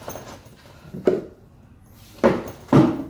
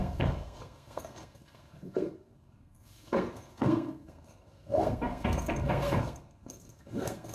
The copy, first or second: second